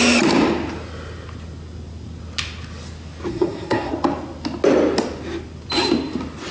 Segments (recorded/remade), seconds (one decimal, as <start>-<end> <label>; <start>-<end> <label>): 0.0-3.3 recorded; 3.3-3.9 remade; 3.9-6.5 recorded